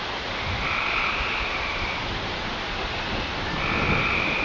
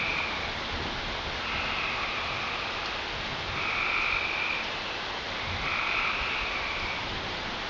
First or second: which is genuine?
second